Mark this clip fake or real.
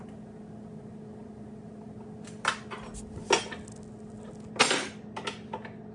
real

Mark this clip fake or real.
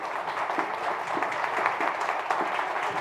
real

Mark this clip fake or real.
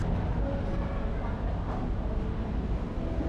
real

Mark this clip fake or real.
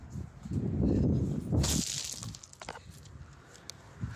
real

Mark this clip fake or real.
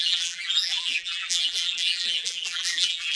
fake